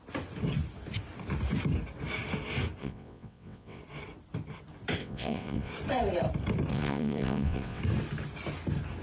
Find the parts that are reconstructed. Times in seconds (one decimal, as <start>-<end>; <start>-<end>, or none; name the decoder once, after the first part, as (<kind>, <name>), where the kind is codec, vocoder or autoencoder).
2.8-3.8 (vocoder, WaveNeXt); 5.0-5.7; 6.7-7.8